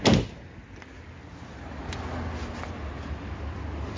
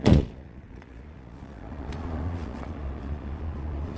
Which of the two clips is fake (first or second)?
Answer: second